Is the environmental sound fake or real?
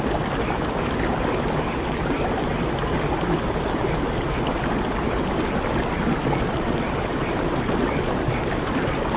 real